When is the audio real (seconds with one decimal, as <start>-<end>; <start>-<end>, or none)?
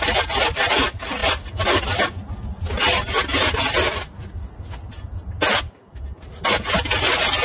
0.0-7.4